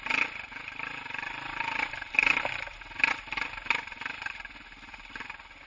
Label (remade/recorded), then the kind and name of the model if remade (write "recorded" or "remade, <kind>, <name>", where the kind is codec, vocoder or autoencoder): recorded